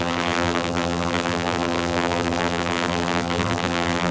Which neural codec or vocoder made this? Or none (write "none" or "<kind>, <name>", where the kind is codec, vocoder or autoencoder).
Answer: vocoder, BigVGAN v2